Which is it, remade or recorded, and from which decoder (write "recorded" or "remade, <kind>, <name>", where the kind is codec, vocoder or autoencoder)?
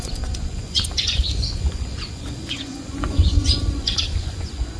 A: remade, vocoder, Vocos